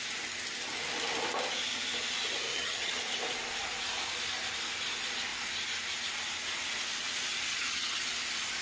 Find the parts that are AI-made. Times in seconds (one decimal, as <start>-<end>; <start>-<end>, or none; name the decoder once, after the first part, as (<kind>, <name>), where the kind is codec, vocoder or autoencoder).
2.5-3.0 (vocoder, HiFi-GAN); 7.5-8.0